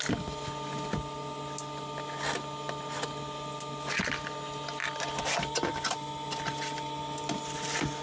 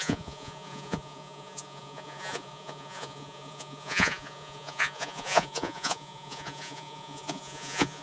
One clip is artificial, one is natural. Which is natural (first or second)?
first